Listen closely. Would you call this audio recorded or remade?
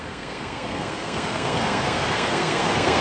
remade